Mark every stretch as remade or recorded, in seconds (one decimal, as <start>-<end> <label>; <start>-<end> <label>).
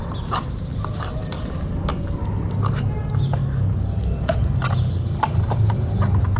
0.0-6.4 recorded